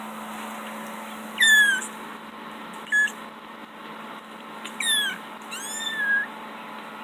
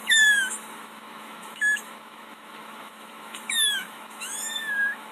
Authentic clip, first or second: first